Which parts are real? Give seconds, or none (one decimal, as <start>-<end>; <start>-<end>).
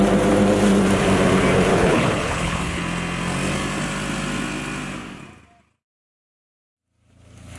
0.0-1.7; 2.8-7.6